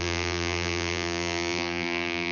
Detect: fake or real fake